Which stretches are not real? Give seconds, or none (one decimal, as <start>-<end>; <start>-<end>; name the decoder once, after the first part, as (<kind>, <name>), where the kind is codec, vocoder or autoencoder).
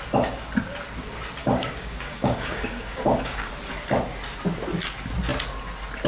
1.4-3.5 (codec, DAC)